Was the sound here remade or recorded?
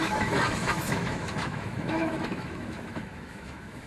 remade